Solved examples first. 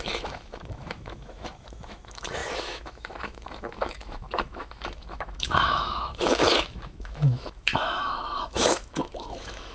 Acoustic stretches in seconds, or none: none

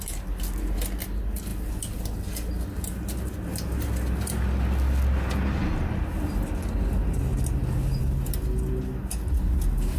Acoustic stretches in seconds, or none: 0.0-10.0

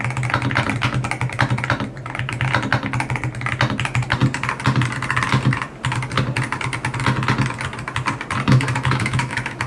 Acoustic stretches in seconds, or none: 0.0-8.5

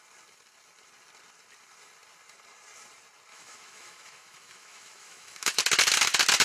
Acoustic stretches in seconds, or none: 0.0-3.3; 5.6-6.4

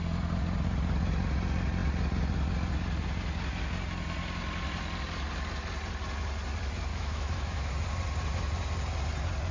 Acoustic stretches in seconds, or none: 0.0-6.9; 7.7-9.5

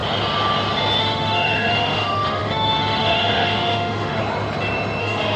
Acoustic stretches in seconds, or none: 0.0-1.0; 4.2-5.0

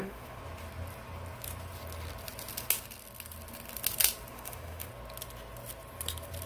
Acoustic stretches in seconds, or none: 0.4-4.3; 4.9-6.5

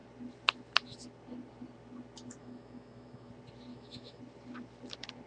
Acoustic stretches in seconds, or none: 0.0-2.4; 3.3-3.7; 4.2-5.3